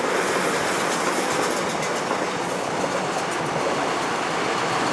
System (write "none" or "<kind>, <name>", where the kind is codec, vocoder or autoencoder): none